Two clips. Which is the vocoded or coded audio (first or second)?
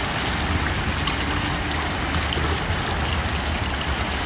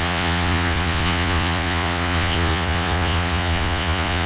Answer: second